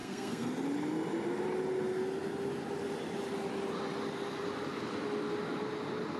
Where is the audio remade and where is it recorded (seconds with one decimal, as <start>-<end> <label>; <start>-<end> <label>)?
0.0-0.5 remade; 0.5-6.2 recorded